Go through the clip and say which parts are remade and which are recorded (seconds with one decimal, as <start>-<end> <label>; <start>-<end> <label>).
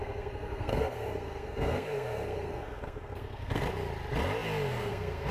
0.0-3.6 remade; 3.6-4.7 recorded; 4.7-5.3 remade